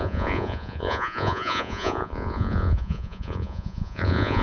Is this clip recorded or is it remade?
remade